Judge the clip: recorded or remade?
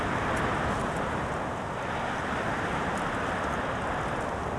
recorded